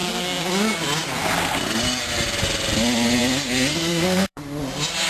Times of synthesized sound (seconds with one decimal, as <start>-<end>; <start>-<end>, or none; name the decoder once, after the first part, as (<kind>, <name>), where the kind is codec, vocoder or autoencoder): 0.0-0.5 (codec, SNAC); 3.7-4.4